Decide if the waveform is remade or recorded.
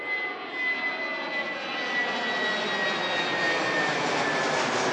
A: recorded